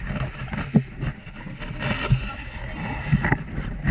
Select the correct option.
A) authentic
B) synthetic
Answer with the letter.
A